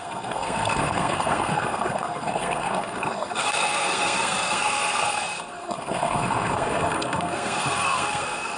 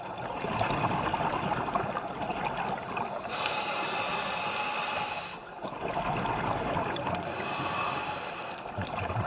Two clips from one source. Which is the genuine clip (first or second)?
second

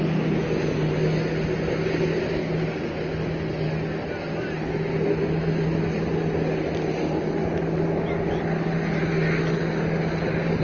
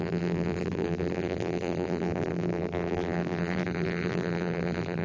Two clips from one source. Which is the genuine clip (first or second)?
first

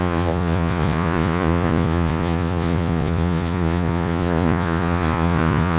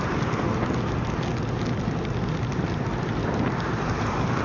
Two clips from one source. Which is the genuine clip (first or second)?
second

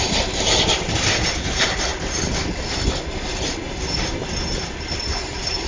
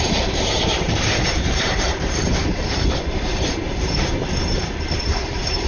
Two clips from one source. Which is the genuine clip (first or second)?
first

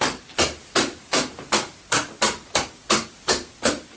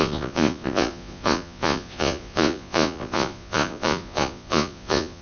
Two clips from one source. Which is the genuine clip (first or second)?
first